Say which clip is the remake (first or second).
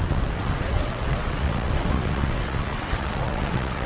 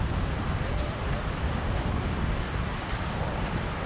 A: first